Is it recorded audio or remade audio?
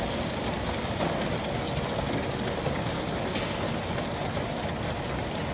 recorded